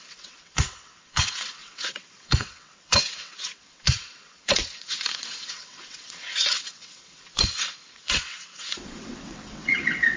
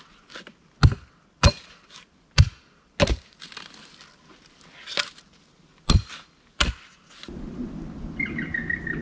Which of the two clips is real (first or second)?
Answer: second